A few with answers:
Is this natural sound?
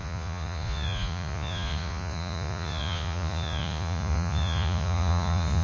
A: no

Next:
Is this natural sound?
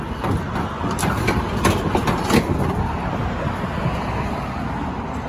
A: yes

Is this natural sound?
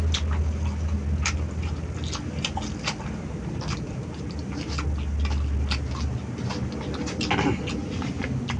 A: yes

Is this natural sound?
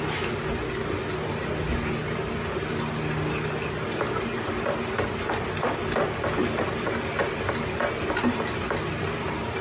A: yes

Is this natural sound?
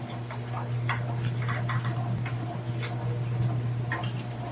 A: yes